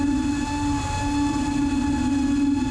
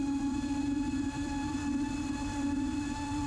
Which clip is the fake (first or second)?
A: second